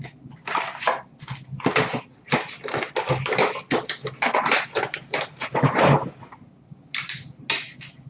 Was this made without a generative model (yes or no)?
yes